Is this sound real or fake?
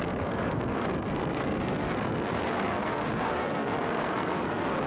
fake